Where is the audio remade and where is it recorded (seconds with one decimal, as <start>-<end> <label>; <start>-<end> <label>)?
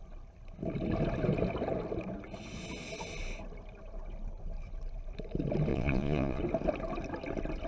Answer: 0.0-5.7 recorded; 5.7-6.4 remade; 6.4-7.7 recorded